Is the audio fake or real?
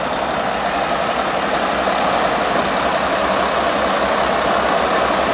real